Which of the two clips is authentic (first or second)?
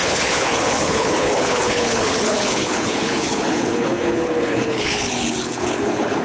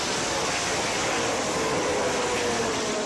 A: second